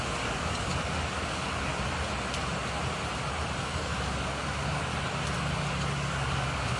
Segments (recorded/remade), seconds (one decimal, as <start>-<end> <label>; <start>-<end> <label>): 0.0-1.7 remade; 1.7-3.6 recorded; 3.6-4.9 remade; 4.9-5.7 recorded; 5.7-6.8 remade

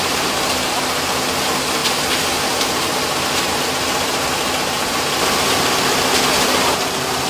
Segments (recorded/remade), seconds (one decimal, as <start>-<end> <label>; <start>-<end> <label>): 0.0-1.8 recorded; 1.8-6.2 remade; 6.2-7.3 recorded

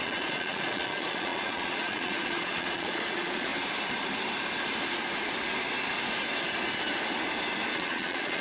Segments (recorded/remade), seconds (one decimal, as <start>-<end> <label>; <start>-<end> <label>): 0.0-3.5 remade; 3.5-7.7 recorded; 7.7-8.4 remade

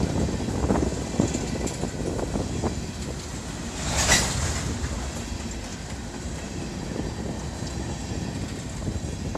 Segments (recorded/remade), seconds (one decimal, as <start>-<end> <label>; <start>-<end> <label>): 0.0-5.7 recorded; 5.7-6.6 remade; 6.6-9.4 recorded

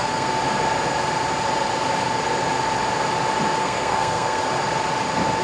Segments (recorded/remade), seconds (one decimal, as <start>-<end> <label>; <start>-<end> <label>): 0.0-0.4 remade; 0.4-3.6 recorded; 3.6-4.4 remade; 4.4-5.4 recorded

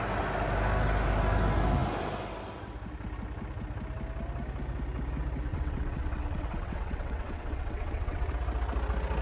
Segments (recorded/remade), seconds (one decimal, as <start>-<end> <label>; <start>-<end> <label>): 0.0-5.5 recorded; 5.5-8.3 remade; 8.3-9.2 recorded